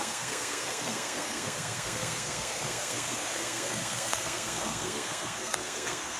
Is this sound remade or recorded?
remade